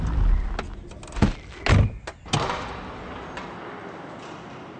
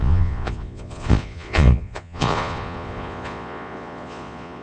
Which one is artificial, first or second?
second